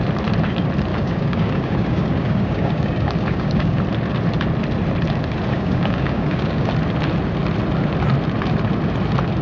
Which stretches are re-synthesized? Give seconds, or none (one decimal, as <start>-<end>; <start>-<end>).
0.9-3.8; 5.5-6.7